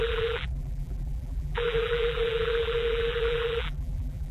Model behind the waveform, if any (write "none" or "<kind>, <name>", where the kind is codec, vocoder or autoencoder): vocoder, BigVGAN v2